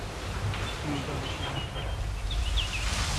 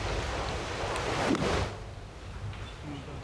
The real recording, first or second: second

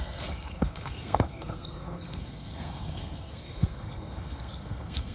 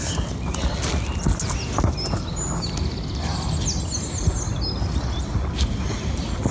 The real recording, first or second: second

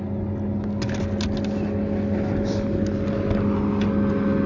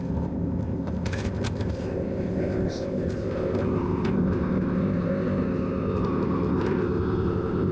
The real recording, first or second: first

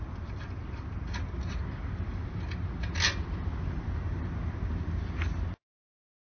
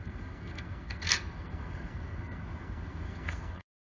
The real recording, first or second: first